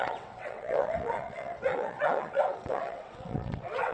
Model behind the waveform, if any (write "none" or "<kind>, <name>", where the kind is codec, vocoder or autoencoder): vocoder, WaveNeXt